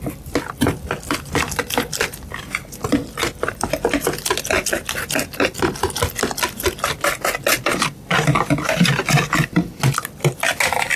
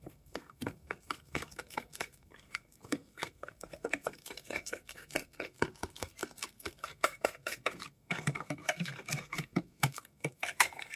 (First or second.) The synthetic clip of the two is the second